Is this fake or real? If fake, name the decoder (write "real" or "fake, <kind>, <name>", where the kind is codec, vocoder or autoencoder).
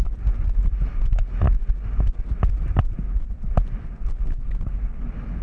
real